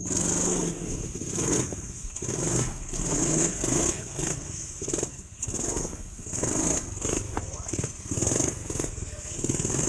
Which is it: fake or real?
fake